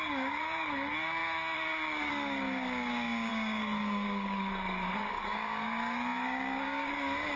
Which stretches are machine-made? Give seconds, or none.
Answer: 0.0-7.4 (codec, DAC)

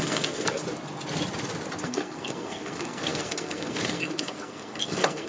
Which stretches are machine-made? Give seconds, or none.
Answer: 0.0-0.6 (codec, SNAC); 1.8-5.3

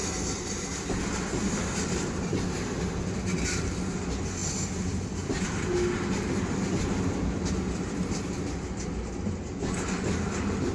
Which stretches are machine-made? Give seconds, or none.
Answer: none

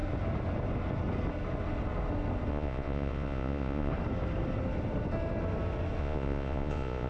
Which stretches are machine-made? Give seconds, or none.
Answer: 2.5-3.9 (vocoder, Vocos); 6.0-7.1

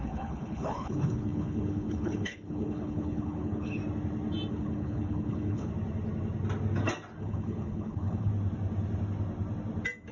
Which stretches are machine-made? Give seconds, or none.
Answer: 0.0-3.8 (codec, HILCodec); 4.5-5.7; 7.2-8.3

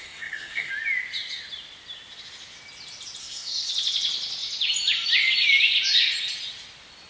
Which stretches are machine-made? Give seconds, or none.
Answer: 0.0-0.7 (codec, SNAC); 3.2-3.7

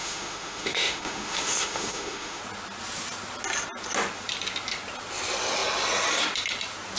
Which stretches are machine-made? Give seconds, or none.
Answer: 0.0-2.4 (autoencoder, DAC-VAE)